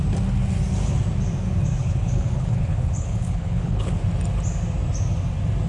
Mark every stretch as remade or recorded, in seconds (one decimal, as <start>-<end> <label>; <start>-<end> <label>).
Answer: 0.0-1.8 recorded; 1.8-4.0 remade; 4.0-5.7 recorded